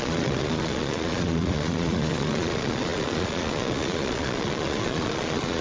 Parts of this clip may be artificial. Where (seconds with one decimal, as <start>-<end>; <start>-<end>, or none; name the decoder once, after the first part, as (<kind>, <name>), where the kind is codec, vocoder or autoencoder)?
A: 0.0-5.6 (vocoder, Vocos)